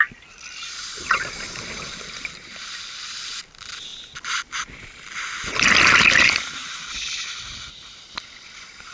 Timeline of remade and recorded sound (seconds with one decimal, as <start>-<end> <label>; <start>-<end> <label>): 0.0-8.9 recorded